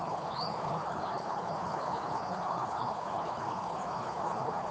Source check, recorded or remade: remade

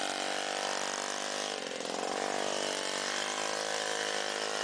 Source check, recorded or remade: recorded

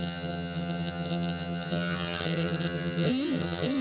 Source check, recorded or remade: remade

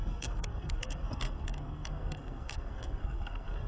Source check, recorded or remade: remade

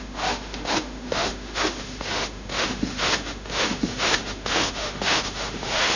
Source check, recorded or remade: remade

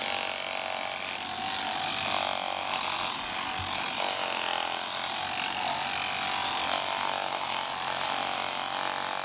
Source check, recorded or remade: recorded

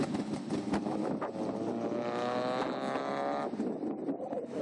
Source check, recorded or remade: recorded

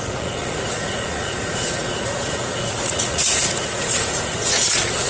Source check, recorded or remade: remade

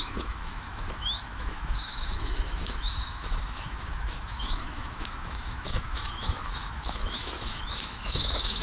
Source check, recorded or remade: remade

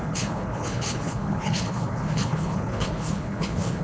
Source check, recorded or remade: remade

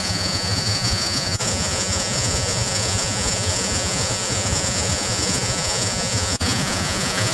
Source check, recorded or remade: remade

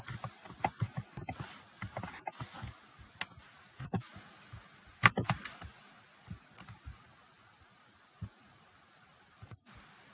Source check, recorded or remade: recorded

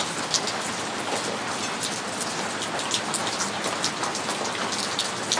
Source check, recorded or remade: recorded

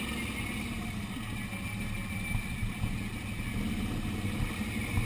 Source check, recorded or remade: recorded